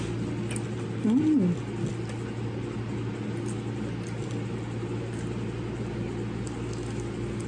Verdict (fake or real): real